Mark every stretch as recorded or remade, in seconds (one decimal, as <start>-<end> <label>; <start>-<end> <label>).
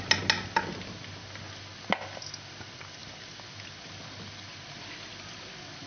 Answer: 0.0-5.9 recorded